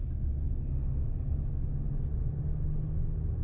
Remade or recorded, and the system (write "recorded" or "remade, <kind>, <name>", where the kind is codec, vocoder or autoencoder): recorded